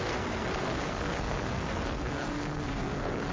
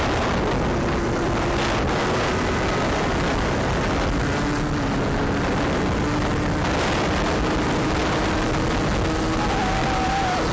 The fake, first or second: first